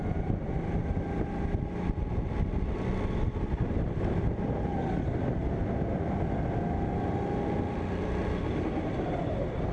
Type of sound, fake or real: real